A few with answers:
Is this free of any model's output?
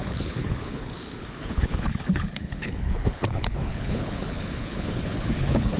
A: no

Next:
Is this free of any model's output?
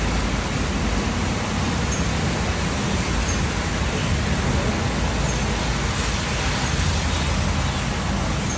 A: yes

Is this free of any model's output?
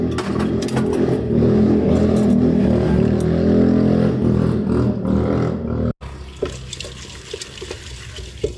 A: yes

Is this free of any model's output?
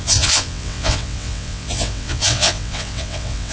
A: no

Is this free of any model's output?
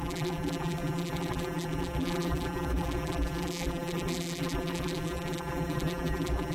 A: no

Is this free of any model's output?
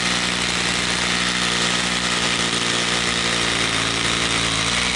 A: yes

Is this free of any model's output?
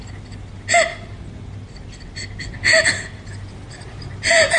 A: yes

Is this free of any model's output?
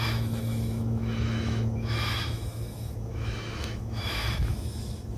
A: no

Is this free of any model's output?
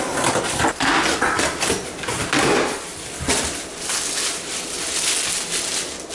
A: yes